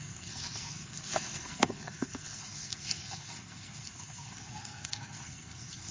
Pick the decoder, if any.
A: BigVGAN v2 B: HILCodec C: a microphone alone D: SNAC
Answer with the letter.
D